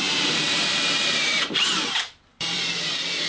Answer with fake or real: fake